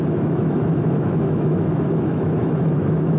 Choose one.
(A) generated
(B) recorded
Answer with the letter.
A